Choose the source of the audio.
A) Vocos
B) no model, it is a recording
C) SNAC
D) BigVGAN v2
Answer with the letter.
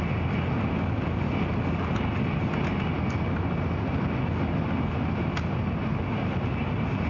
B